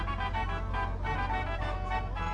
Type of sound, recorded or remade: recorded